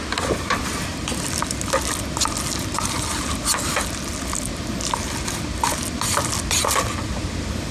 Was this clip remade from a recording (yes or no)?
no